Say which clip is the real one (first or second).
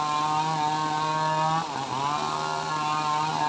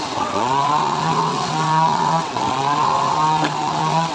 first